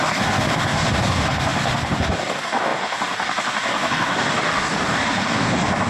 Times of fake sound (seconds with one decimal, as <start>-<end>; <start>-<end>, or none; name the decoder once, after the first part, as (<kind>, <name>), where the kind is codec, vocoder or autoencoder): 0.0-5.9 (codec, DAC)

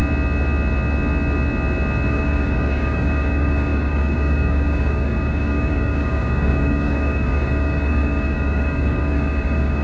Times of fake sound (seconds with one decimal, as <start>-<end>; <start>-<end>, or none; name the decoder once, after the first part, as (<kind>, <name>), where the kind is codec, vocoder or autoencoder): 2.1-9.8 (codec, DAC)

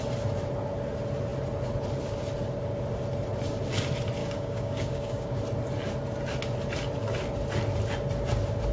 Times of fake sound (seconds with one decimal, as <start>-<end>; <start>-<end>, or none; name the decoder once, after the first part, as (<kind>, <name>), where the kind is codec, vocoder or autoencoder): 4.2-5.4 (codec, DAC)

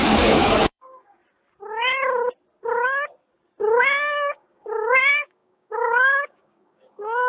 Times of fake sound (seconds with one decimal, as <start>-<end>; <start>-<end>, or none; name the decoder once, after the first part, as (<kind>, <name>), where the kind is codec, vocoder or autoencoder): 0.0-1.2 (codec, DAC); 3.8-7.3